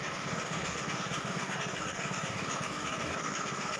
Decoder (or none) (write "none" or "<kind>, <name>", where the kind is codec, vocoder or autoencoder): codec, DAC